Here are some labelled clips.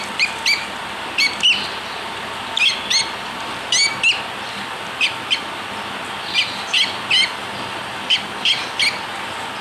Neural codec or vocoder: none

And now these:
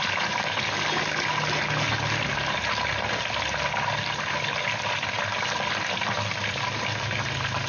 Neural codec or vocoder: none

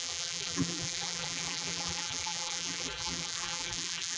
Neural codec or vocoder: vocoder, BigVGAN v2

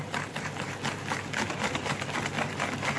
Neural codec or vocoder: none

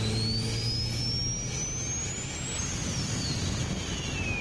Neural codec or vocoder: none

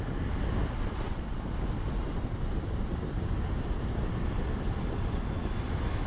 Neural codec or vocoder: none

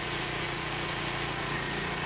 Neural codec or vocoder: vocoder, Vocos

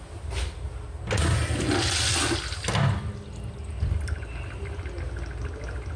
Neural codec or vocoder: none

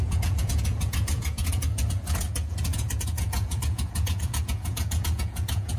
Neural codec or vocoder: vocoder, Vocos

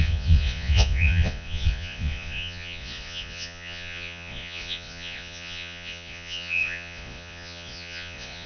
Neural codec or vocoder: vocoder, Vocos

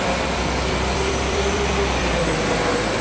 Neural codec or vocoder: vocoder, BigVGAN v2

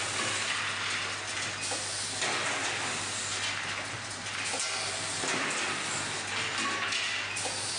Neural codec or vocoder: none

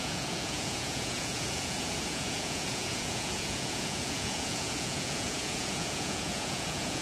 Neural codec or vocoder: vocoder, Vocos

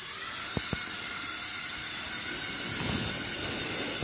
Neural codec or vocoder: none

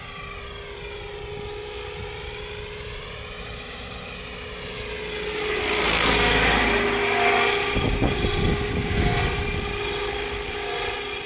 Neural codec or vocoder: none